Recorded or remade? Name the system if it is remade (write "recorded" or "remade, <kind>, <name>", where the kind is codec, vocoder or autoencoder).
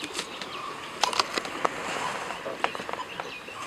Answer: recorded